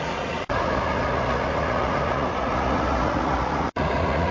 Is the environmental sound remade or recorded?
remade